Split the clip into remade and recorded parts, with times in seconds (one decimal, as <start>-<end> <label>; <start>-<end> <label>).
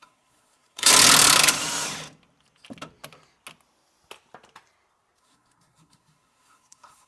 0.0-0.9 remade; 0.9-5.2 recorded; 5.2-7.1 remade